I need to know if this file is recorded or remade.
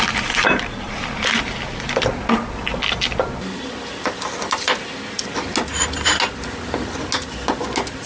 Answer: recorded